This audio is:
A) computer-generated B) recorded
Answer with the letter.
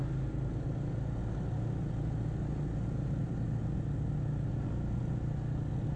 B